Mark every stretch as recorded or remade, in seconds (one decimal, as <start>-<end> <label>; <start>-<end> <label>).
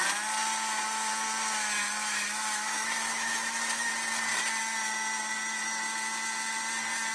0.0-1.8 recorded; 1.8-3.9 remade; 3.9-7.1 recorded